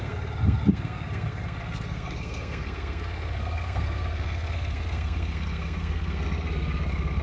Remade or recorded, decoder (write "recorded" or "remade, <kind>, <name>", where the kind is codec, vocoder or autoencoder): remade, codec, SNAC